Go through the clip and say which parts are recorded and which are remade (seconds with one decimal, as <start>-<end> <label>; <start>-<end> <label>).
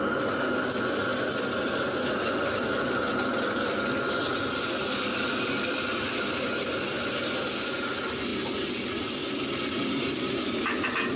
0.0-11.2 recorded